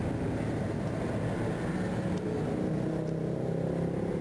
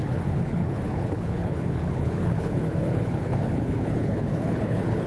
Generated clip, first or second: second